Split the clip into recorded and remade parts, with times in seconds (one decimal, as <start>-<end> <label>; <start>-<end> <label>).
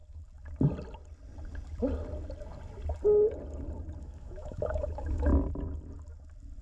0.0-4.0 recorded; 4.0-5.3 remade; 5.3-6.6 recorded